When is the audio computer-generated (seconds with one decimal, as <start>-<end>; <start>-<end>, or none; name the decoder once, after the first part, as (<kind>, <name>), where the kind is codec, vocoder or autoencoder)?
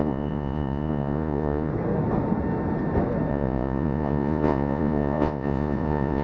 0.0-1.7 (vocoder, Vocos); 3.3-6.2